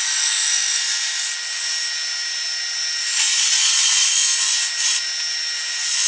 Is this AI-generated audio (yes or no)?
no